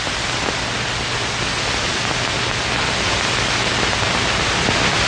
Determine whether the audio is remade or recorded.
recorded